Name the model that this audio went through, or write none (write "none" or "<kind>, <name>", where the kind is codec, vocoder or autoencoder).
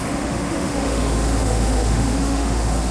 autoencoder, DAC-VAE